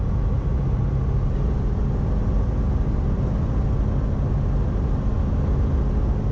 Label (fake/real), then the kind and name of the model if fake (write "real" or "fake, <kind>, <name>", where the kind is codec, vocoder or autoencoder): real